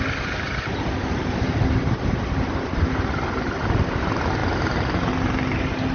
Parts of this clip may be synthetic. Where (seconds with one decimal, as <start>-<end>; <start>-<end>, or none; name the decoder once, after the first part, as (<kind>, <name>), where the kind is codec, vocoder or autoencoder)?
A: none